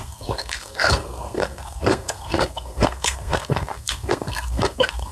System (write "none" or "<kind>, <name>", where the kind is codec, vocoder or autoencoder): codec, SNAC